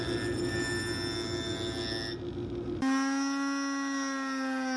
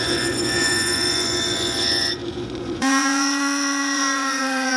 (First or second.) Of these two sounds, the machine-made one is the second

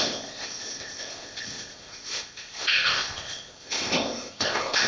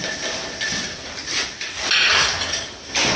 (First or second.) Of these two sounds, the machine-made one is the first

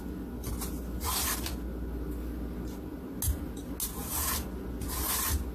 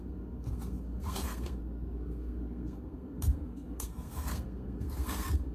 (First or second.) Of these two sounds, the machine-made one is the second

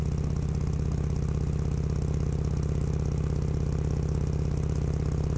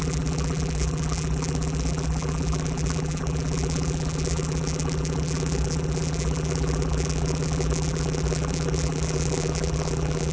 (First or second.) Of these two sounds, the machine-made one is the second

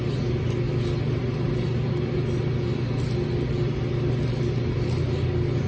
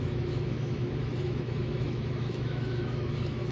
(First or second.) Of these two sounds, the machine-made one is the second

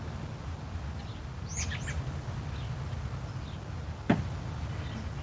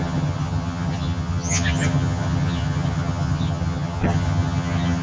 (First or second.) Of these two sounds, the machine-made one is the second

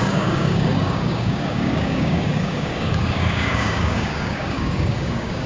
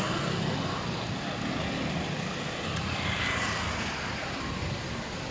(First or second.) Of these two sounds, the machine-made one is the first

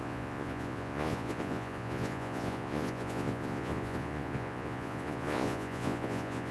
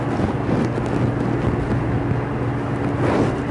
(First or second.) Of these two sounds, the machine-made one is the first